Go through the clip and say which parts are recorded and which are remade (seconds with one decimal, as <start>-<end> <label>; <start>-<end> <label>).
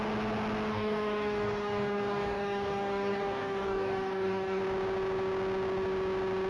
0.0-0.7 recorded; 0.7-4.6 remade; 4.6-6.5 recorded